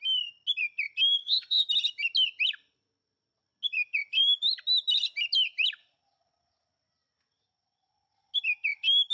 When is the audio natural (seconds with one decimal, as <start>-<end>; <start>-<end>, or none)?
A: 0.0-1.2; 1.7-9.1